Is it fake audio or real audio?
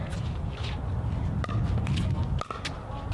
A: real